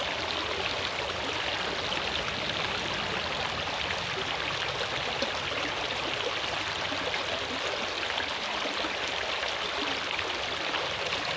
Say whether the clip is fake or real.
real